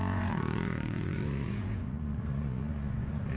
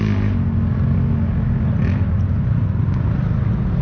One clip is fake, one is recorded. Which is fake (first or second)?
first